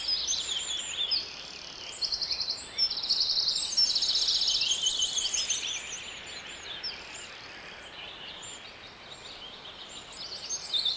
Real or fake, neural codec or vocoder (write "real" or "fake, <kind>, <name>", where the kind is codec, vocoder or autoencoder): real